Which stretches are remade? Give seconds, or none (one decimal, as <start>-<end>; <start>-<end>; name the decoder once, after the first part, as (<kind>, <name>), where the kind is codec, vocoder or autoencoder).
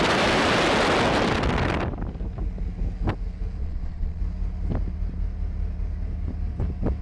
3.6-4.2 (vocoder, Vocos)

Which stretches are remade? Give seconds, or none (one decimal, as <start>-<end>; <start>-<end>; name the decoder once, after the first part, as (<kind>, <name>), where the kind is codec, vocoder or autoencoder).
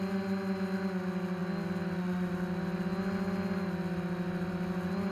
none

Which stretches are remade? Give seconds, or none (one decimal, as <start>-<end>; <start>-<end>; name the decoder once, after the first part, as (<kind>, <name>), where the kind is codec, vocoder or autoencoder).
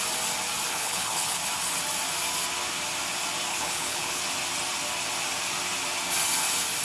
0.7-1.4 (codec, HILCodec); 3.5-4.2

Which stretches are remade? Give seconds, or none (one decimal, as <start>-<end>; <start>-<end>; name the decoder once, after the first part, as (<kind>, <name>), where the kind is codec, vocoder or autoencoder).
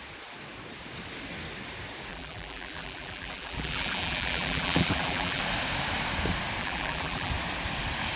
2.1-5.4 (vocoder, BigVGAN v2); 6.6-7.3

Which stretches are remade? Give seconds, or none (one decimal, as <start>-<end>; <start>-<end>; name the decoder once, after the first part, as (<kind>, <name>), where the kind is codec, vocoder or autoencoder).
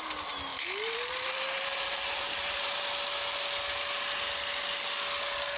0.5-2.8 (vocoder, BigVGAN v2)